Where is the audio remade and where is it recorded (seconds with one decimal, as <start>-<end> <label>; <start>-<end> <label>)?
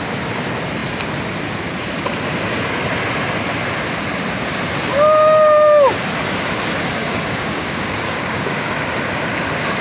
0.0-7.0 recorded; 7.0-8.7 remade; 8.7-9.8 recorded